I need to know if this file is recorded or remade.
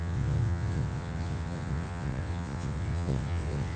remade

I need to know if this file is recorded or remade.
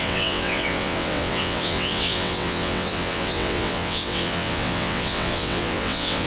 remade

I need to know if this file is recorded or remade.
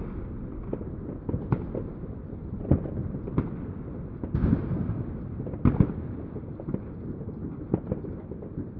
recorded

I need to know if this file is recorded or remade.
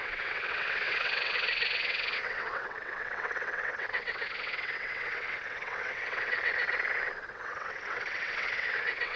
remade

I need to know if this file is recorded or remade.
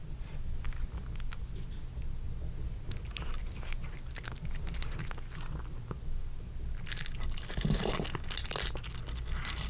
recorded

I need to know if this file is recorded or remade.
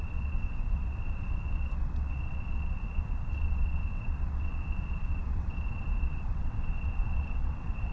remade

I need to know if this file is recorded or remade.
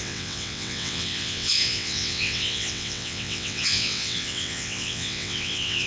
remade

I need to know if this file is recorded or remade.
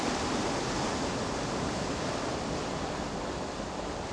recorded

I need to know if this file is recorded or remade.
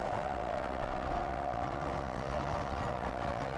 remade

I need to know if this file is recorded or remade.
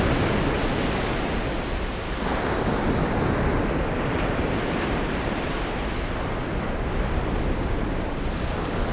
recorded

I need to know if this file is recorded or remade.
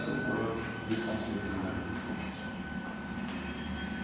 recorded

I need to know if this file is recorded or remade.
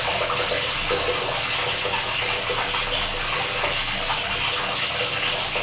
recorded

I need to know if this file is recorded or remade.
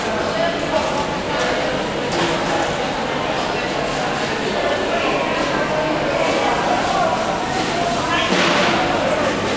recorded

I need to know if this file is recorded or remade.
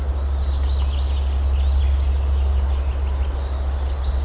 recorded